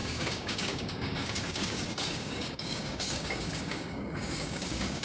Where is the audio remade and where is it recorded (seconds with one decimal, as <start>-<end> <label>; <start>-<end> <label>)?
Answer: 0.0-5.0 remade